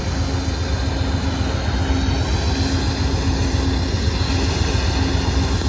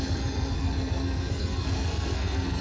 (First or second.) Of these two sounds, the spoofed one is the second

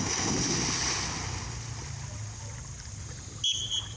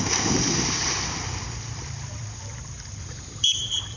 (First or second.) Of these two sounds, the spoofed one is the second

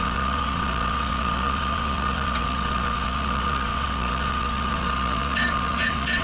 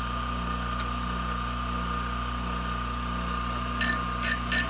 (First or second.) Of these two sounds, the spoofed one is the first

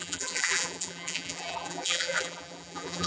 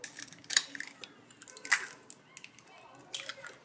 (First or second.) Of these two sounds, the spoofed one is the first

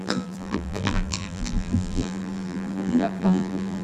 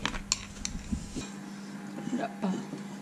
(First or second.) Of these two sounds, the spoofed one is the first